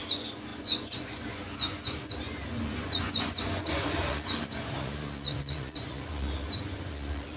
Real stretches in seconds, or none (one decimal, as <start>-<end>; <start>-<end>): none